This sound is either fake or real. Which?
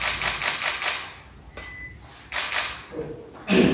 real